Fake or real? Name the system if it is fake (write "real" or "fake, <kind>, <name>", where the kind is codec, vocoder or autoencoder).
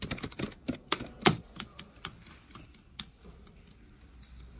real